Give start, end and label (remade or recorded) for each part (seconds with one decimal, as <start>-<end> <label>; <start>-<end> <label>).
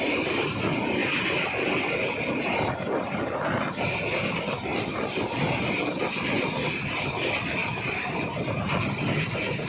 0.0-1.0 recorded; 1.0-2.5 remade; 2.5-7.6 recorded; 7.6-8.1 remade; 8.1-9.7 recorded